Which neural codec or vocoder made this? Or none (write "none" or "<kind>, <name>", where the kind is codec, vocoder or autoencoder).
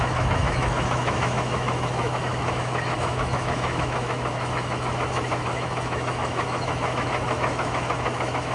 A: autoencoder, DAC-VAE